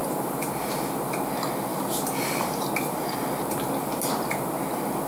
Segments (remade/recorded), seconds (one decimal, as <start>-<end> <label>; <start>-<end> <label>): 0.0-0.7 remade; 0.7-1.7 recorded; 1.7-3.2 remade; 3.2-5.1 recorded